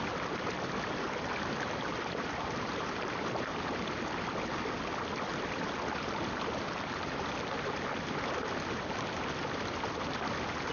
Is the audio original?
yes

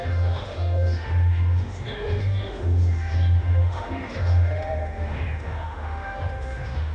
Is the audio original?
no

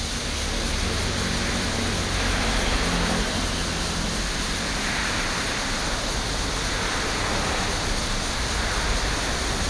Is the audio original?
yes